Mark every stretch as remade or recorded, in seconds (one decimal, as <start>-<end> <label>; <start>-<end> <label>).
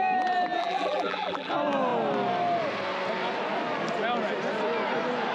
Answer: 0.0-0.6 recorded; 0.6-1.5 remade; 1.5-5.3 recorded